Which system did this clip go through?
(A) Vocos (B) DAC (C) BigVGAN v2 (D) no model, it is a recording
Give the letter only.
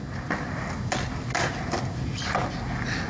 D